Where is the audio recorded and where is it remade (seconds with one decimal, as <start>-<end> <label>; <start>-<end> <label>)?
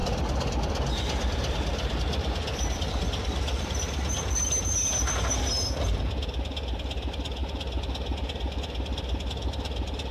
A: 0.0-2.9 remade; 2.9-10.1 recorded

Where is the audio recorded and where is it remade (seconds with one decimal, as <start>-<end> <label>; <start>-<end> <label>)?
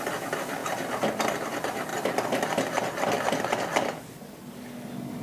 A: 0.0-5.2 recorded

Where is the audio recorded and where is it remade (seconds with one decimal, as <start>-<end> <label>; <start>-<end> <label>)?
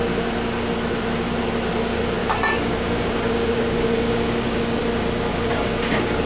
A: 0.0-2.2 recorded; 2.2-4.8 remade; 4.8-5.3 recorded; 5.3-6.3 remade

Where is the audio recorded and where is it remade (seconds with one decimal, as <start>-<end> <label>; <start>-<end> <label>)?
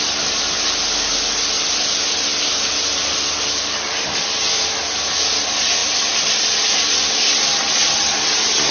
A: 0.0-8.7 recorded